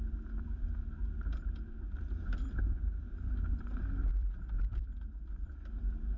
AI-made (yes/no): yes